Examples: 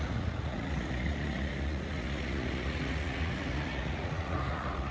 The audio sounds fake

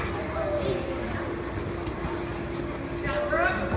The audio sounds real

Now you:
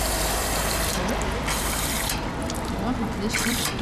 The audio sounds fake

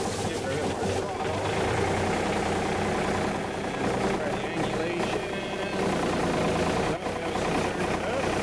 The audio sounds real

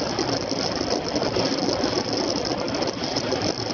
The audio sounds real